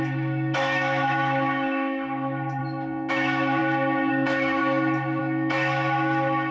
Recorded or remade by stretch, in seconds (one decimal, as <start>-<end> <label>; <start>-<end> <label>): 0.0-2.6 remade; 2.6-3.1 recorded; 3.1-3.6 remade; 3.6-4.1 recorded; 4.1-4.6 remade; 4.6-5.2 recorded; 5.2-6.5 remade